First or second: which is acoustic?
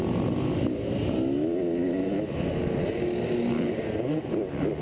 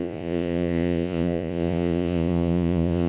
first